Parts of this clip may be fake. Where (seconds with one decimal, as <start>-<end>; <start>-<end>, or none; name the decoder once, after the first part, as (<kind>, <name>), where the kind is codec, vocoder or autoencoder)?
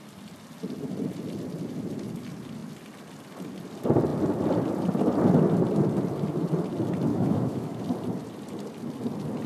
7.1-7.8 (autoencoder, DAC-VAE)